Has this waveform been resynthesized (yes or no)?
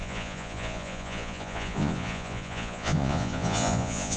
yes